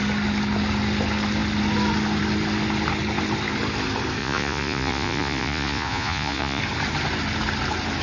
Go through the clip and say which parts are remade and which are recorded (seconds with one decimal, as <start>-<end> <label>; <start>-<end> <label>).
0.0-4.2 recorded; 4.2-6.6 remade; 6.6-8.0 recorded